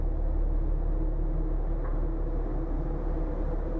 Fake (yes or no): no